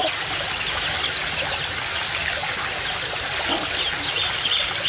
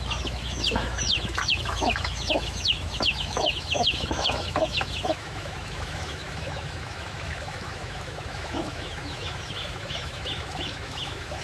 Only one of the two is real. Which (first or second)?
first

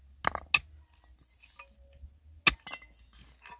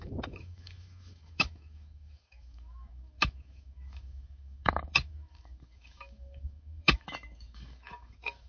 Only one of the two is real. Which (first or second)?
first